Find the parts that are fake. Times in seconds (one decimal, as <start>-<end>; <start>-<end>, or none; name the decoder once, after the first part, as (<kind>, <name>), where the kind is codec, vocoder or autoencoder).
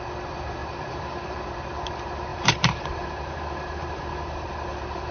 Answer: 0.6-1.4 (vocoder, BigVGAN v2); 2.3-5.1